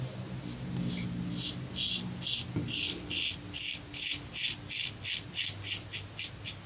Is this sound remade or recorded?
recorded